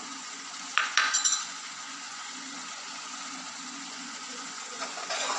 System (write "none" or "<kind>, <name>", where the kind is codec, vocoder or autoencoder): vocoder, Vocos